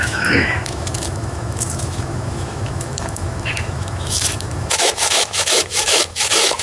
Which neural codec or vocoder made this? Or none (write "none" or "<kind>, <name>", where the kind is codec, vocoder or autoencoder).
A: autoencoder, DAC-VAE